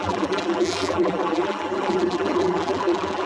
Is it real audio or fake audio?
fake